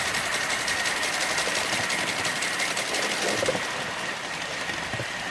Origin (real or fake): real